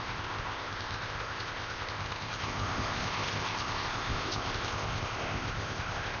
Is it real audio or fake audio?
fake